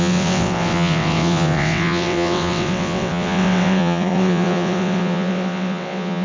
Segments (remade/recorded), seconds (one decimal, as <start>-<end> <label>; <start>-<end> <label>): 0.0-6.2 remade